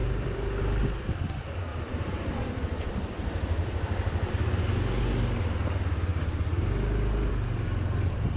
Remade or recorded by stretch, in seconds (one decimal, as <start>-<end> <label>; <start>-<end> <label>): 0.0-0.6 remade; 0.6-1.7 recorded; 1.7-4.3 remade; 4.3-8.4 recorded